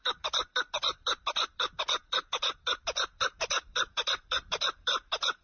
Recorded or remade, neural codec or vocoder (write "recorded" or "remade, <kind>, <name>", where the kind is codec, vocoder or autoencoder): remade, vocoder, BigVGAN v2